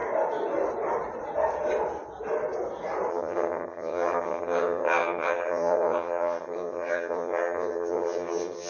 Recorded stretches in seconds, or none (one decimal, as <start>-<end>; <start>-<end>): 0.0-3.1